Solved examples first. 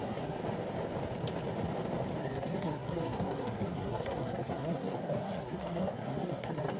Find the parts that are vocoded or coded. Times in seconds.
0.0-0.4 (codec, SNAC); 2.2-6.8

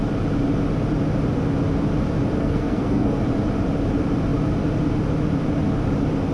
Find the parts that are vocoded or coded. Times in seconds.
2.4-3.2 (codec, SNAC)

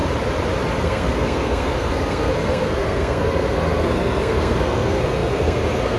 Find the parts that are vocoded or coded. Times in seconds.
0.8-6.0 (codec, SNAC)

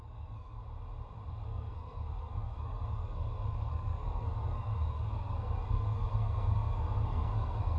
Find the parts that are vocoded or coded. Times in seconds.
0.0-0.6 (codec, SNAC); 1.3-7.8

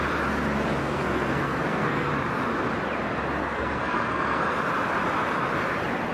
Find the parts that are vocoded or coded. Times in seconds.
0.8-2.1 (codec, SNAC); 3.4-4.6

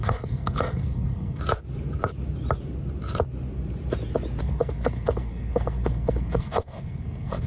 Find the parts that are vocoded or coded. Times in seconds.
0.0-1.4 (codec, SNAC); 4.4-7.5

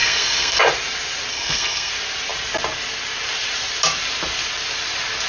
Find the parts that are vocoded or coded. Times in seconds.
0.0-0.6 (codec, SNAC); 1.3-1.9